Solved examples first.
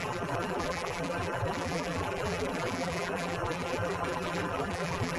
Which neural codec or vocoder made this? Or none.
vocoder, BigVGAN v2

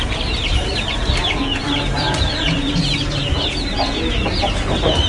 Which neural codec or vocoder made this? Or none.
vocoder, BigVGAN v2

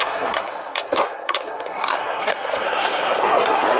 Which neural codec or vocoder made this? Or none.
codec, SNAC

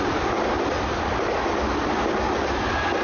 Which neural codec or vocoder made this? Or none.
none